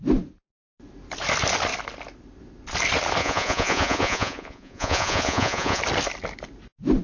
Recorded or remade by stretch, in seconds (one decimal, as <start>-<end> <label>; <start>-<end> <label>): 0.0-3.2 recorded; 3.2-5.8 remade; 5.8-7.0 recorded